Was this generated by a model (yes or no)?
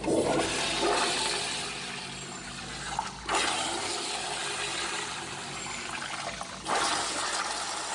no